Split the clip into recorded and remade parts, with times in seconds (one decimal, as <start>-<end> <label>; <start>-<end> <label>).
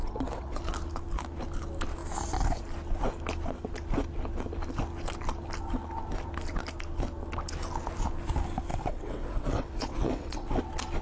0.0-0.6 remade; 0.6-8.7 recorded; 8.7-10.6 remade; 10.6-11.0 recorded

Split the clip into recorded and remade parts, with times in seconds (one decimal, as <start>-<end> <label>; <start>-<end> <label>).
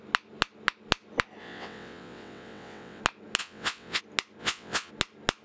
0.0-1.4 recorded; 1.4-3.0 remade; 3.0-3.4 recorded; 3.4-4.0 remade; 4.0-4.4 recorded; 4.4-4.9 remade; 4.9-5.4 recorded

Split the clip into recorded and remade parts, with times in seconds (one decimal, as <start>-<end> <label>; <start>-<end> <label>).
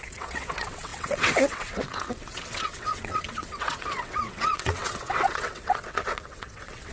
0.0-6.9 remade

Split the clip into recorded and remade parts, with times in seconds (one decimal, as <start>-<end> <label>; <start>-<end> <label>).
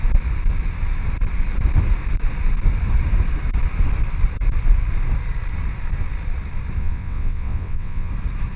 0.0-6.8 recorded; 6.8-8.1 remade; 8.1-8.6 recorded